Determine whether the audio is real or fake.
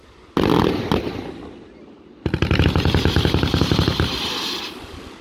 real